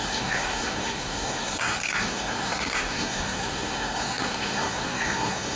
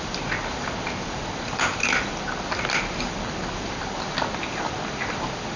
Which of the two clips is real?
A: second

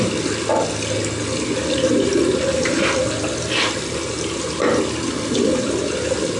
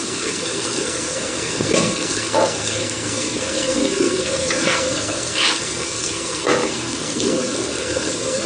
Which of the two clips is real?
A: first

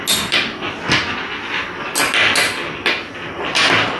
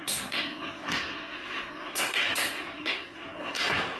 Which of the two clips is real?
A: first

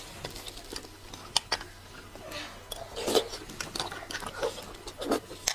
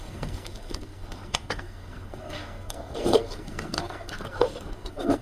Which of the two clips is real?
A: first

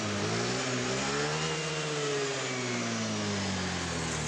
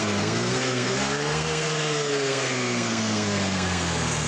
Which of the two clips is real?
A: first